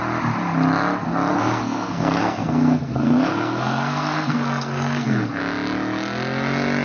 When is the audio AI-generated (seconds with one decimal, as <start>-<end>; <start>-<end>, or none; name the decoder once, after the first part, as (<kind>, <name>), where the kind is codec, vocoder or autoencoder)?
1.3-5.4 (codec, SNAC)